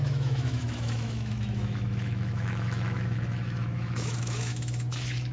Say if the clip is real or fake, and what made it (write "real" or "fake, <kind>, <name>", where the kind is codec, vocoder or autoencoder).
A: fake, autoencoder, DAC-VAE